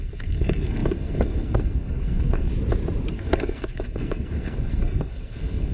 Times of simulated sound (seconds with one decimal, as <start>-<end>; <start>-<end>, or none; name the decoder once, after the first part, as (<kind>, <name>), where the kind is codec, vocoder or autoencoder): 0.0-2.5 (codec, SNAC); 3.1-5.7

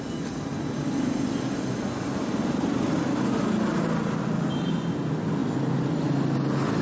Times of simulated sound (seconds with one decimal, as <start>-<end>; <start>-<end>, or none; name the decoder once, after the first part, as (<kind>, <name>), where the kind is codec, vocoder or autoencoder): none